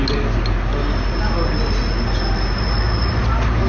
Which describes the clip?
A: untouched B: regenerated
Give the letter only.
A